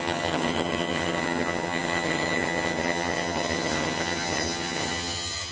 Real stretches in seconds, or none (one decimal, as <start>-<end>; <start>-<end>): none